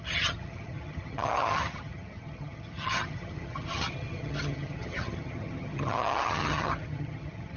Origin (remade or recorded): remade